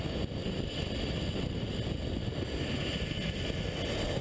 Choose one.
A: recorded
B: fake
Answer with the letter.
A